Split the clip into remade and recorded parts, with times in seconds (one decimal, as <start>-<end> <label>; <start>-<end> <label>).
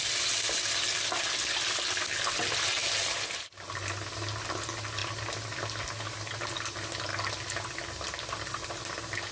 0.0-9.3 recorded